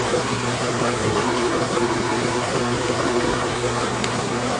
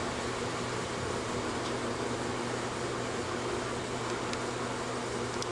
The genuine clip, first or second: second